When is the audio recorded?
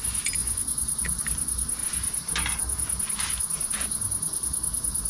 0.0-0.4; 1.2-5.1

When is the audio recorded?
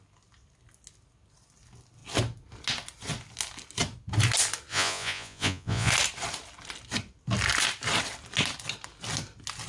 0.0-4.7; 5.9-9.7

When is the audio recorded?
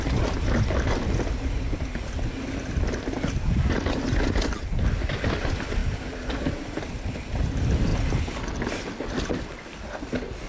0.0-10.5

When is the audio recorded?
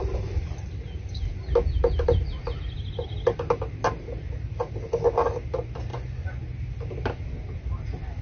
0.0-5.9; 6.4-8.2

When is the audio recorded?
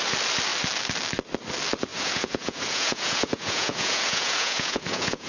0.0-1.9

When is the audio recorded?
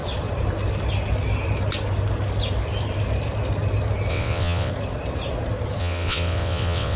0.0-4.1; 4.7-5.8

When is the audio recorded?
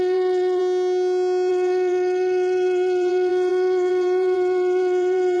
0.6-1.5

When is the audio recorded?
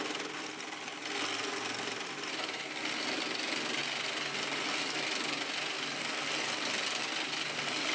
0.0-7.9